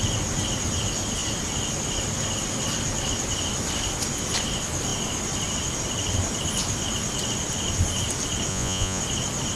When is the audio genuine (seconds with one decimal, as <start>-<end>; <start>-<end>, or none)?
0.0-8.5; 9.0-9.6